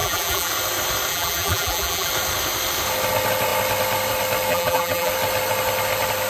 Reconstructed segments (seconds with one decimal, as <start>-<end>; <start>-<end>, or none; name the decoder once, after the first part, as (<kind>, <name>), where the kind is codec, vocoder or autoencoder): 0.0-0.5 (vocoder, BigVGAN v2); 1.1-2.1; 4.5-5.1